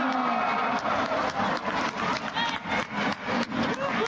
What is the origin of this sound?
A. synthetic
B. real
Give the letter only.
B